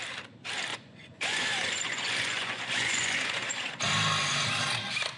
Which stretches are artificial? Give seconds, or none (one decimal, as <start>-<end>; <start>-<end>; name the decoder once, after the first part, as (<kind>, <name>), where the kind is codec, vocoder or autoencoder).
0.7-3.8 (vocoder, Vocos)